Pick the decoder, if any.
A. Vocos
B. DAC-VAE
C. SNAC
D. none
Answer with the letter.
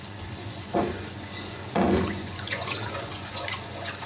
A